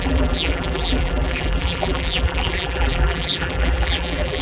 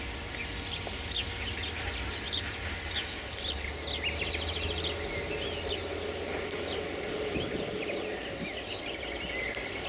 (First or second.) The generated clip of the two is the first